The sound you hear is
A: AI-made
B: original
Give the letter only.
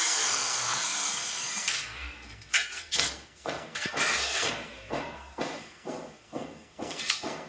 A